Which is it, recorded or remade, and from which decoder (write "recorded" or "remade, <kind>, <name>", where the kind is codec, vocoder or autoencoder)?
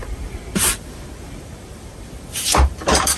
remade, vocoder, BigVGAN v2